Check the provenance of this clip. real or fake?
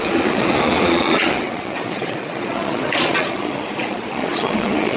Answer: fake